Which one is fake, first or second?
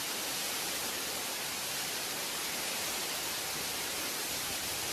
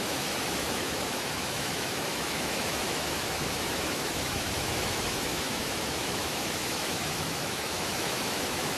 second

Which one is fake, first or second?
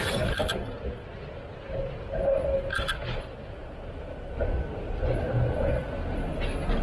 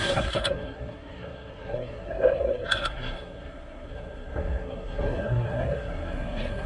second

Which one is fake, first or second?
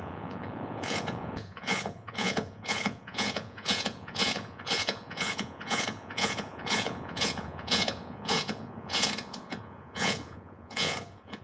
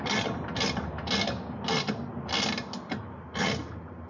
first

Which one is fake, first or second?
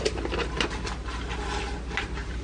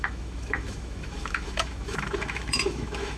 second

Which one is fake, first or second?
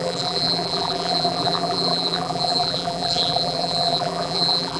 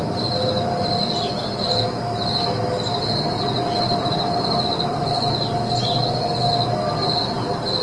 first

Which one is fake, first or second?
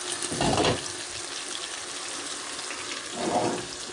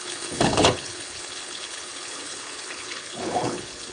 second